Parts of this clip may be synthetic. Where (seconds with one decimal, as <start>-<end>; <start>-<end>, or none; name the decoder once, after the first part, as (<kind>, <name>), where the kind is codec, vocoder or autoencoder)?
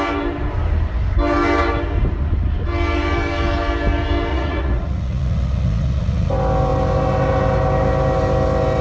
4.3-6.3 (vocoder, Vocos)